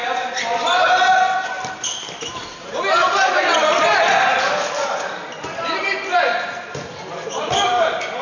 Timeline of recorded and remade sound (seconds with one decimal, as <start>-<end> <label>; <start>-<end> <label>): 0.0-8.2 recorded